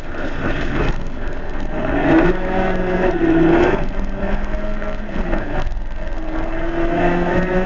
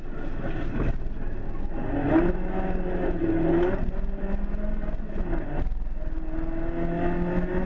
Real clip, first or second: second